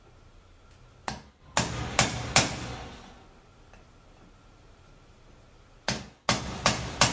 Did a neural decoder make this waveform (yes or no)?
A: no